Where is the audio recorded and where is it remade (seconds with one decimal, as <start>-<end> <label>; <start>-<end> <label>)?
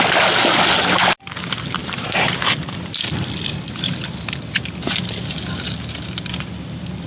0.0-1.8 recorded; 1.8-2.4 remade; 2.4-7.1 recorded